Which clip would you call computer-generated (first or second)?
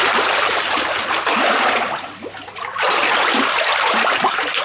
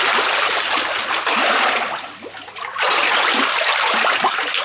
first